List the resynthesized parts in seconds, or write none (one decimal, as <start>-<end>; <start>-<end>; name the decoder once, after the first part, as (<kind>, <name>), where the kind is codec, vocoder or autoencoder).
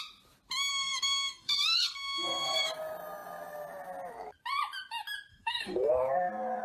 0.7-2.7 (codec, SNAC); 5.3-5.9